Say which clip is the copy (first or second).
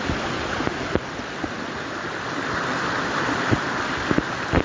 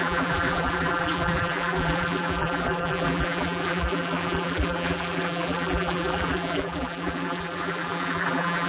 second